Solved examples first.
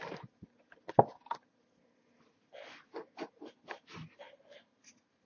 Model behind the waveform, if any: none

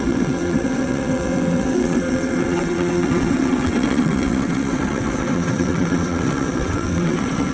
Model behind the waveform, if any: vocoder, WaveNeXt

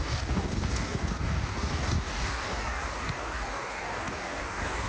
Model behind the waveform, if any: codec, DAC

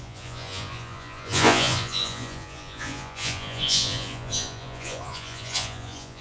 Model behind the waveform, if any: vocoder, Vocos